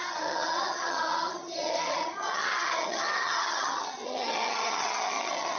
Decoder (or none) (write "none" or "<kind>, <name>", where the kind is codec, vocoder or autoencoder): vocoder, HiFi-GAN